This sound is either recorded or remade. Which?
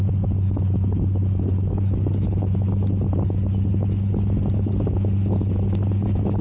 recorded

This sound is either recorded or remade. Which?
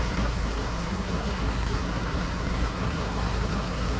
remade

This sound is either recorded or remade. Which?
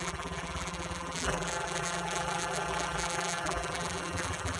remade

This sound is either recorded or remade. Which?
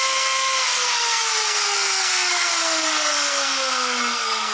remade